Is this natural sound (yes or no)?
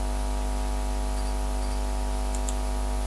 yes